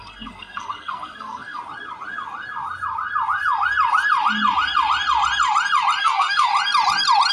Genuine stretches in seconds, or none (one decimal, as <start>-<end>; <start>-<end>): 1.6-6.0; 6.5-7.3